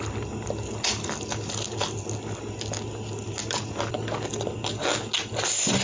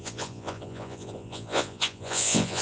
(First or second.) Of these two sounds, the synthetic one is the second